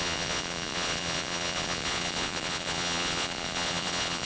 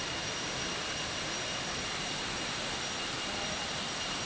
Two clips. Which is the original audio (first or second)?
second